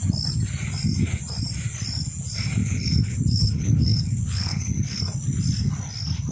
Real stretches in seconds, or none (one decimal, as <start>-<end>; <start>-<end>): 0.0-2.6; 5.0-6.3